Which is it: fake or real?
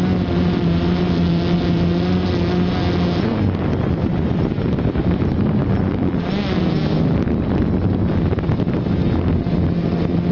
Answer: real